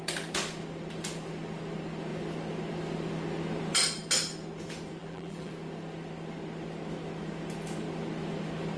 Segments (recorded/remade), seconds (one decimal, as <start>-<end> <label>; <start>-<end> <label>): 0.0-5.0 recorded; 5.0-5.5 remade; 5.5-8.8 recorded